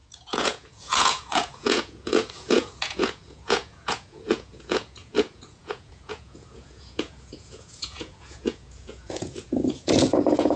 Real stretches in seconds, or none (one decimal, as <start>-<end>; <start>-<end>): none